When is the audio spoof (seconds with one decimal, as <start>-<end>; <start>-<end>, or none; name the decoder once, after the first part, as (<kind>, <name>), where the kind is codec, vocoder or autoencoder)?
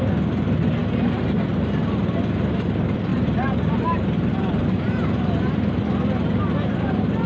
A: 3.1-5.8 (vocoder, BigVGAN v2)